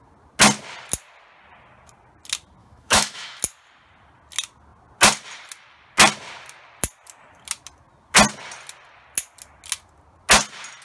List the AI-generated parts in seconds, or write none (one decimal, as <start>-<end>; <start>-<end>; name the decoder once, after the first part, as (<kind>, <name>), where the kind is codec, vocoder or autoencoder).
2.6-3.4 (autoencoder, DAC-VAE)